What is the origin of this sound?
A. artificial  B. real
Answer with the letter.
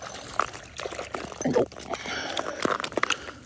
B